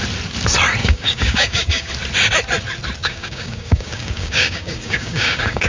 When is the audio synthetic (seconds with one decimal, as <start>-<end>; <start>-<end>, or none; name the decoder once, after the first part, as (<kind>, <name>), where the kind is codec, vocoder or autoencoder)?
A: 0.8-1.9 (codec, DAC); 3.0-5.7